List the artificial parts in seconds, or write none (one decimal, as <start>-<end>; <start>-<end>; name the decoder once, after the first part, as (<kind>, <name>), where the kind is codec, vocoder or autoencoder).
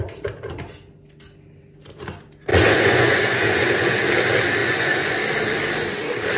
2.5-4.0 (vocoder, Vocos); 4.6-5.2